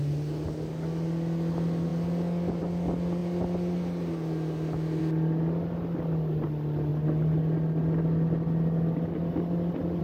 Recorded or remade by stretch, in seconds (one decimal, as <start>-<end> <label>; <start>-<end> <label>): 0.0-10.0 recorded